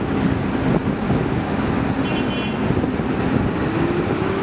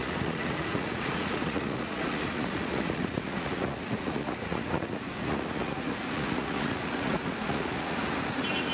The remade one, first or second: second